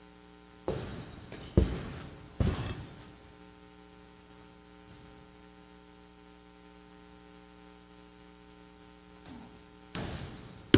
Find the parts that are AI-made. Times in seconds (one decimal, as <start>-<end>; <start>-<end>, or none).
none